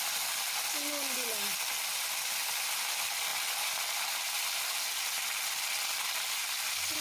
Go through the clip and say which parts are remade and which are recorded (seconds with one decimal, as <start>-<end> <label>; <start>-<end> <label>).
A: 0.0-7.0 recorded